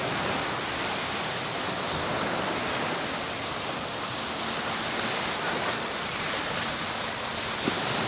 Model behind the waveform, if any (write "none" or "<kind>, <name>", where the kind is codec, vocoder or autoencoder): none